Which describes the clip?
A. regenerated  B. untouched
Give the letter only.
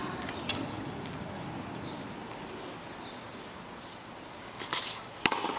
B